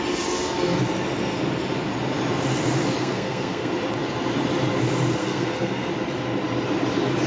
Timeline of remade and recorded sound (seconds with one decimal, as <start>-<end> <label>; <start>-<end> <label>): 0.0-3.0 recorded; 3.0-3.7 remade; 3.7-5.2 recorded; 5.2-5.9 remade; 5.9-7.3 recorded